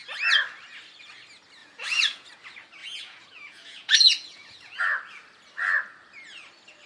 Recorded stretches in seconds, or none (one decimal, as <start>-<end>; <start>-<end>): 0.0-1.6; 2.3-2.8; 4.8-6.9